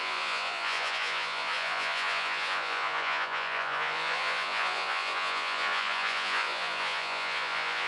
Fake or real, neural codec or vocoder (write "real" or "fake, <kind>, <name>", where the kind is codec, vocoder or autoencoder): fake, vocoder, Vocos